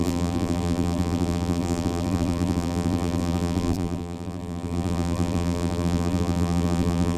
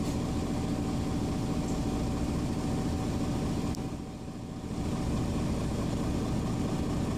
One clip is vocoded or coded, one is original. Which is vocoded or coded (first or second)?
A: first